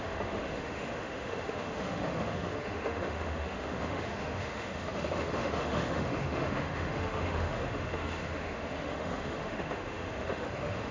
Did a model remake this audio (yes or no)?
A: yes